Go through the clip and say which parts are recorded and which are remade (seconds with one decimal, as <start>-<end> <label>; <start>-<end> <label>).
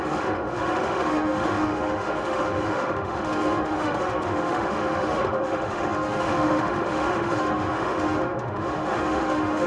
0.0-9.7 remade